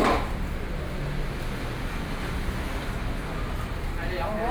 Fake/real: real